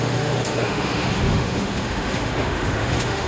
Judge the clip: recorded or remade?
remade